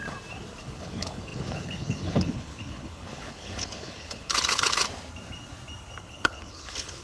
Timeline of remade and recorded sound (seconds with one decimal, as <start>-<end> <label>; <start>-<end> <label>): 0.0-0.6 recorded; 0.6-4.8 remade; 4.8-6.0 recorded; 6.0-7.0 remade